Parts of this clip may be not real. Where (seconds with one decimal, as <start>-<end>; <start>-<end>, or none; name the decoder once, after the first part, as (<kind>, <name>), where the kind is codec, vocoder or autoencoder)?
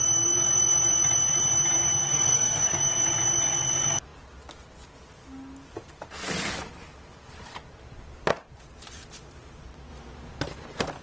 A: 2.1-2.8 (codec, SNAC)